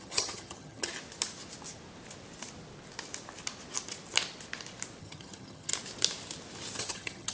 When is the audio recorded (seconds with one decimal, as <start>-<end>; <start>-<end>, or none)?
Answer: 0.9-5.0; 5.7-6.8

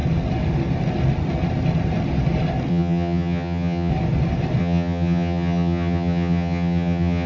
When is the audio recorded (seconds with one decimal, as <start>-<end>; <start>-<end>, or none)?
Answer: 0.0-2.7; 3.9-4.6

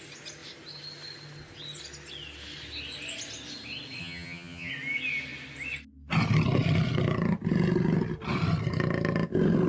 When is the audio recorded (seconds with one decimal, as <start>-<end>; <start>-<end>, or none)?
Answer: 0.0-4.0; 4.7-9.7

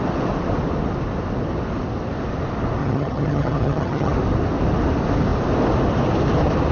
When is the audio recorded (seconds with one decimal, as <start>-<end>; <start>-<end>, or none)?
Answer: 0.0-2.8; 4.1-6.7

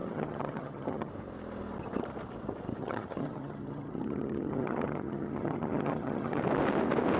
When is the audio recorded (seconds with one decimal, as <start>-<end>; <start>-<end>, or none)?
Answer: 1.1-2.8; 6.4-7.2

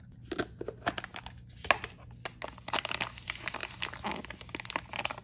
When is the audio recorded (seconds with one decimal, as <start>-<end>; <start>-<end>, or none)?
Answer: 0.0-5.2

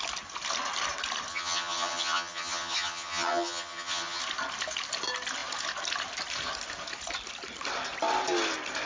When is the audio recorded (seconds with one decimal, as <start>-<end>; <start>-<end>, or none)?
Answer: 0.0-1.3; 4.2-8.9

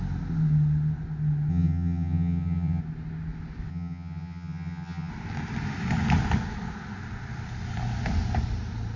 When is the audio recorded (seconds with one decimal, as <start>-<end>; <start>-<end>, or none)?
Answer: 0.0-1.5; 2.8-3.7; 5.1-9.0